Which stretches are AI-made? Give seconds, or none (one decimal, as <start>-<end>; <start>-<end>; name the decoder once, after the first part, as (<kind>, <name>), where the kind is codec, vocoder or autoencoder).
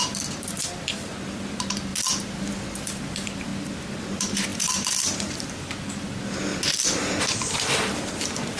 0.0-3.5 (vocoder, BigVGAN v2); 4.0-8.6